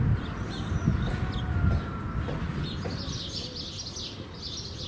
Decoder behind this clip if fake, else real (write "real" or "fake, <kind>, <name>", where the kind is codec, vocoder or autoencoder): real